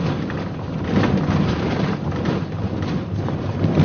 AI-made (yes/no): no